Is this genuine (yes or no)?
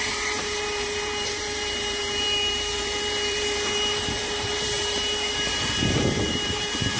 no